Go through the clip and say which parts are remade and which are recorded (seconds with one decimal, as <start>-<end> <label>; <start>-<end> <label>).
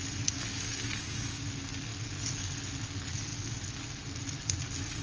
0.0-0.5 recorded; 0.5-1.5 remade; 1.5-5.0 recorded